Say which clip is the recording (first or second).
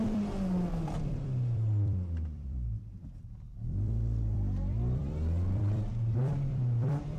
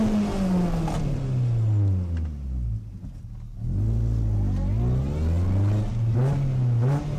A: second